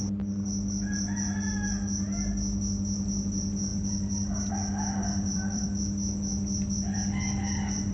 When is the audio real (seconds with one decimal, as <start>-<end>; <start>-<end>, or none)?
0.0-3.7; 4.5-5.0; 5.8-7.9